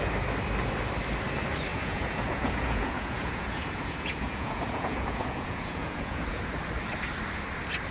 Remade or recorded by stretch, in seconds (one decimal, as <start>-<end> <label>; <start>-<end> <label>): 0.0-1.7 recorded; 1.7-6.4 remade; 6.4-7.9 recorded